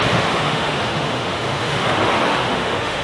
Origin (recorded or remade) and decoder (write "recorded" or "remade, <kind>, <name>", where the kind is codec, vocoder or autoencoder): remade, autoencoder, DAC-VAE